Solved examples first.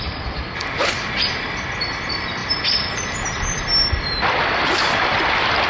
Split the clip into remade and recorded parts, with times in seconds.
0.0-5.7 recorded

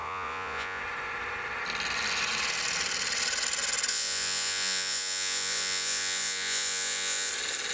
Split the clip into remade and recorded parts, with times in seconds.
0.0-0.8 remade; 0.8-3.9 recorded; 3.9-7.3 remade; 7.3-7.7 recorded

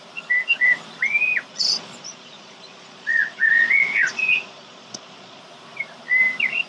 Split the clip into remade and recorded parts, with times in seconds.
0.0-1.5 recorded; 1.5-5.4 remade; 5.4-6.7 recorded